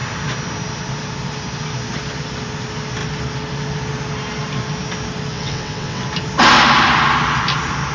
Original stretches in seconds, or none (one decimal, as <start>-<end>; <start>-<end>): 0.0-5.3; 6.0-7.9